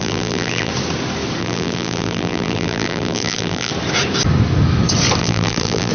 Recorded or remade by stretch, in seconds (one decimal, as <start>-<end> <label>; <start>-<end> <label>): 0.0-0.7 remade; 0.7-1.4 recorded; 1.4-3.7 remade; 3.7-5.2 recorded; 5.2-5.9 remade